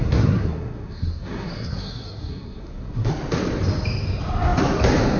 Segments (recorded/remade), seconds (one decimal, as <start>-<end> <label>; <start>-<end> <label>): 0.0-3.1 remade; 3.1-5.2 recorded